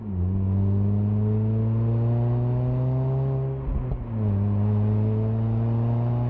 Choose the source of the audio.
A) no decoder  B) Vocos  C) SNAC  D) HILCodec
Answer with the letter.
A